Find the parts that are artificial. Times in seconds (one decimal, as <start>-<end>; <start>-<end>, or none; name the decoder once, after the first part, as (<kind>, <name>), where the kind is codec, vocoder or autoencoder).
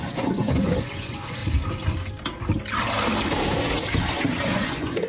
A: 0.0-1.4 (vocoder, Vocos); 4.5-5.1